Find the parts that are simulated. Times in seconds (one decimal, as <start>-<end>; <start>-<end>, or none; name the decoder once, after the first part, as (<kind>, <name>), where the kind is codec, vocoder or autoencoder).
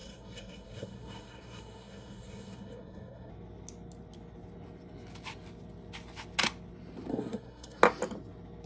0.0-3.3 (codec, SNAC); 7.1-7.8